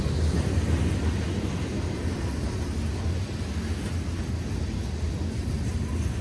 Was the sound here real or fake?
real